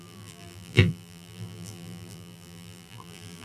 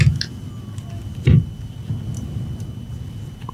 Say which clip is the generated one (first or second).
first